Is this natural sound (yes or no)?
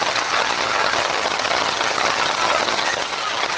no